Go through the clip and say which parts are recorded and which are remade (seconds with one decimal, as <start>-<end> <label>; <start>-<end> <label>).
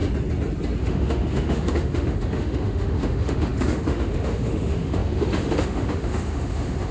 0.0-0.8 recorded; 0.8-6.9 remade